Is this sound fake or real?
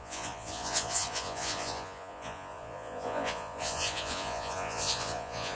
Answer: fake